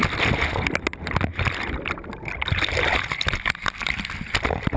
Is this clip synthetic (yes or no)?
no